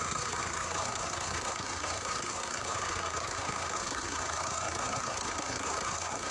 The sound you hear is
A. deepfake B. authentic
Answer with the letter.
A